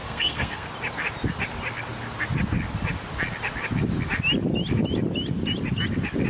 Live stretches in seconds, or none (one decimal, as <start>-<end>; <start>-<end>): 0.7-6.3